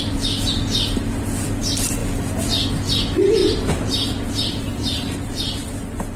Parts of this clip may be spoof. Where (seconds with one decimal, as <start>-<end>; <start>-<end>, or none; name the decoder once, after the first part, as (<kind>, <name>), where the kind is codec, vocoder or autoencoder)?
3.4-5.7 (vocoder, BigVGAN v2)